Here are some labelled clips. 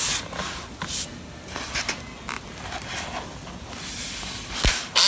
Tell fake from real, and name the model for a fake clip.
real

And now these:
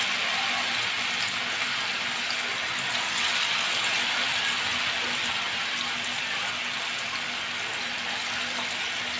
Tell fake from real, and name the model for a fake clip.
real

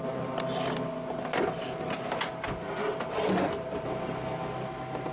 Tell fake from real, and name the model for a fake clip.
real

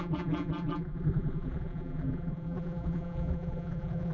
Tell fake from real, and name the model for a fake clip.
fake, vocoder, BigVGAN v2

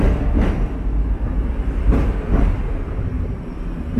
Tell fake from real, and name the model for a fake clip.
real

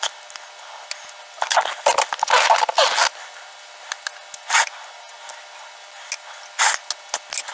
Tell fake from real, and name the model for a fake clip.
real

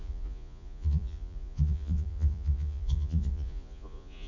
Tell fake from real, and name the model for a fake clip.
fake, vocoder, Vocos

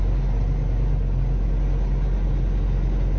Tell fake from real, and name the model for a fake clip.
real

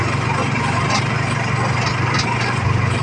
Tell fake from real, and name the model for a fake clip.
real